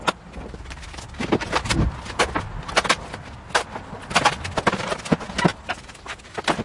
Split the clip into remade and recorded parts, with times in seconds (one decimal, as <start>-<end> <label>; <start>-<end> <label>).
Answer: 0.0-5.5 recorded; 5.5-6.6 remade